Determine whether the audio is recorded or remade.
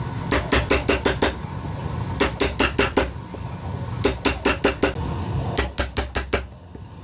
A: recorded